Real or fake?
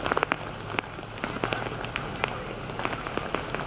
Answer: real